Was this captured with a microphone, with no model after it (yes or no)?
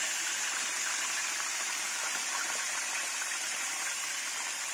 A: no